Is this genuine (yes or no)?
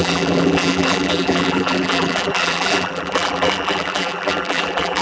no